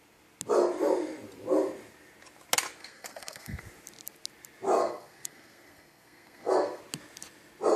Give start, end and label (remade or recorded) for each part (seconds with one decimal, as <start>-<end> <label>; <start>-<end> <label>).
0.0-2.8 recorded; 2.8-3.6 remade; 3.6-4.8 recorded; 4.8-6.8 remade; 6.8-7.8 recorded